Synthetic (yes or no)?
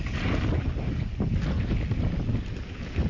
no